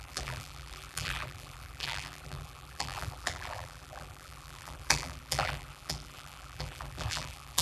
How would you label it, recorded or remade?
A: remade